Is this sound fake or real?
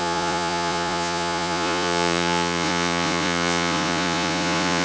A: fake